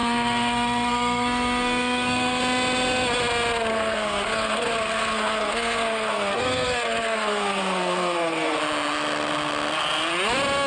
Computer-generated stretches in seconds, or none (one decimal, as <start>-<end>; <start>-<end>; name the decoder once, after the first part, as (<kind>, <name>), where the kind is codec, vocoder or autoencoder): 0.0-2.4 (codec, SNAC); 3.7-8.6